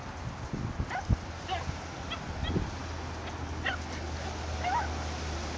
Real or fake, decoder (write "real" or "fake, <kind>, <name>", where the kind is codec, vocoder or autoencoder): real